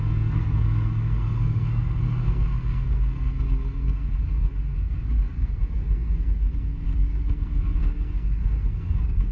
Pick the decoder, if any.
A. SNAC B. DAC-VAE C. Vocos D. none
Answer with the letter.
A